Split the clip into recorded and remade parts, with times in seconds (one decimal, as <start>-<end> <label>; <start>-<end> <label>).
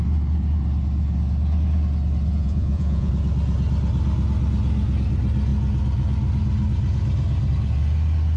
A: 0.0-2.3 recorded; 2.3-3.1 remade; 3.1-8.4 recorded